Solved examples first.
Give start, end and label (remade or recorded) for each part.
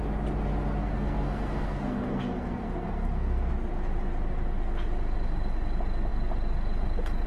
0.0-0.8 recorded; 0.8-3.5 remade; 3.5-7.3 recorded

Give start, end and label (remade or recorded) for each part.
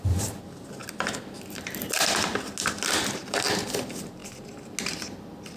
0.0-5.6 recorded